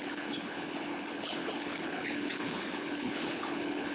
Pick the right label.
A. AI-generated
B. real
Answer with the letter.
A